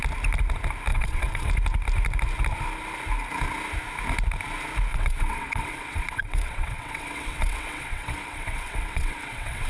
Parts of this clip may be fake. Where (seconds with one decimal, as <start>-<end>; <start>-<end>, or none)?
0.9-1.5; 4.9-9.7